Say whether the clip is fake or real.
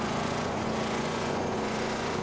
fake